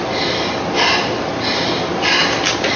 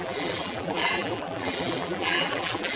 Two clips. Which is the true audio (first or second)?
first